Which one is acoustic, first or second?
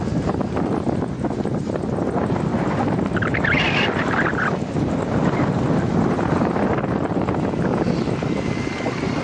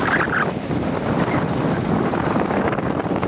first